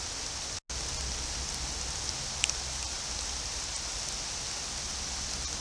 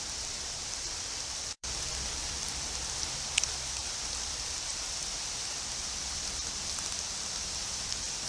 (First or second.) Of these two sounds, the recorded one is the first